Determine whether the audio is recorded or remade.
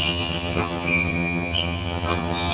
remade